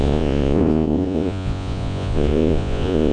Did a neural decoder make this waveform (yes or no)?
yes